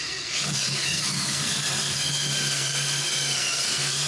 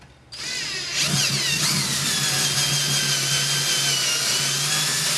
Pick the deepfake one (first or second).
first